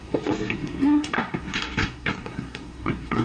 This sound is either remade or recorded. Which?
remade